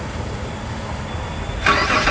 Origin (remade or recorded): recorded